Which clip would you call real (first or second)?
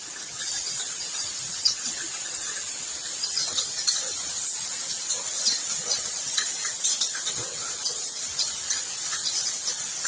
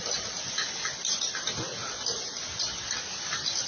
second